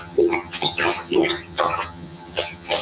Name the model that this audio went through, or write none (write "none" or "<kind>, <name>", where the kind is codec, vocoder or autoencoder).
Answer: vocoder, HiFi-GAN